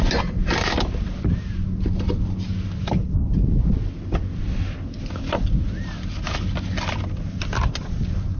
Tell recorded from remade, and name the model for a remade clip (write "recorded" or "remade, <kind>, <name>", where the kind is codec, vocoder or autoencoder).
recorded